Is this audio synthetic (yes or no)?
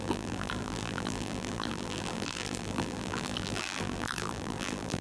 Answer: yes